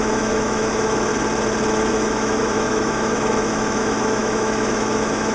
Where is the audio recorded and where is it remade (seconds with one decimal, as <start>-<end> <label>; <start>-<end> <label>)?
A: 0.0-1.1 remade; 1.1-1.9 recorded; 1.9-5.3 remade